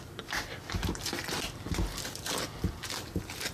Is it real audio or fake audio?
real